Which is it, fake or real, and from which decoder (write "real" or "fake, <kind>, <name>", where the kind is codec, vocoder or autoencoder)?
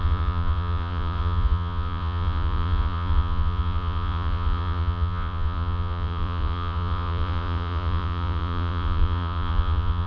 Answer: fake, vocoder, Vocos